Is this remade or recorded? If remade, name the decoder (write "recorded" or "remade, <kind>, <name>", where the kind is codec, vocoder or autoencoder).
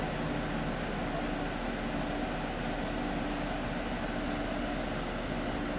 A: recorded